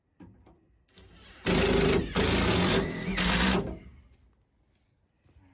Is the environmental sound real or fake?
real